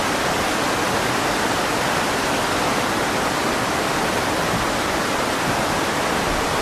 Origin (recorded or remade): recorded